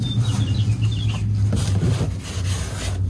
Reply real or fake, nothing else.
real